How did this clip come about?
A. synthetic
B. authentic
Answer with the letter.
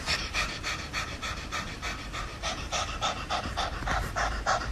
A